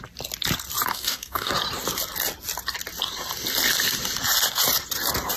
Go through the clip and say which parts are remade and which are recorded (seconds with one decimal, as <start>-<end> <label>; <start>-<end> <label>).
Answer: 0.0-0.9 recorded; 0.9-1.5 remade; 1.5-5.4 recorded